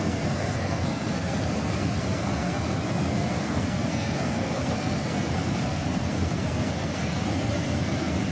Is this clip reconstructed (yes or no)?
yes